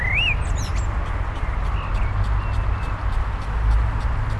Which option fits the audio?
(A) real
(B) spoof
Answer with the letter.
A